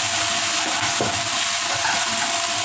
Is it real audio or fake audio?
real